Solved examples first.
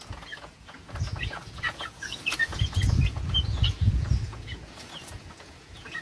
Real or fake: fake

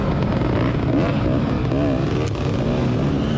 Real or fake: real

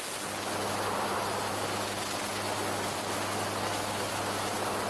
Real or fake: real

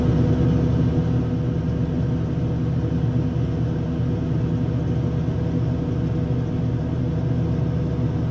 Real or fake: real